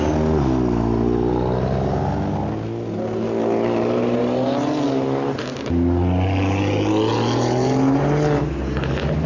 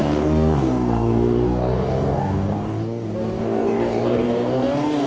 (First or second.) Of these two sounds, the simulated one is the second